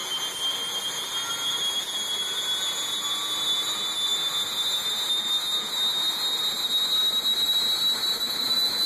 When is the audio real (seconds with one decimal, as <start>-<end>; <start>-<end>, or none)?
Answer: 0.0-8.9

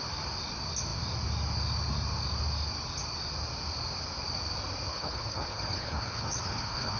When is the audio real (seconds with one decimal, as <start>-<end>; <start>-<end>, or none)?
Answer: 0.0-4.9

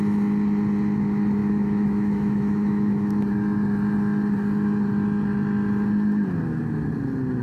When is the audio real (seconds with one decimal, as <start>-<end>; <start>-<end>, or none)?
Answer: 0.0-1.4; 3.2-7.4

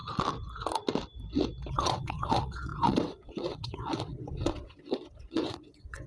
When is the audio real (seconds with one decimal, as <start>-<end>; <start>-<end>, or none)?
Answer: 0.0-1.7

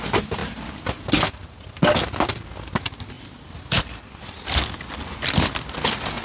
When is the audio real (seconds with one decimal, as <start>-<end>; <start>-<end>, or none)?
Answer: 0.0-6.2

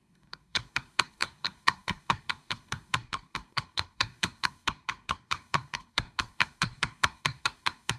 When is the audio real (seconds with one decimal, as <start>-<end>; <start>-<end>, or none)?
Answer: none